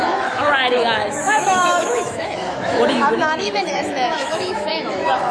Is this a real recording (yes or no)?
no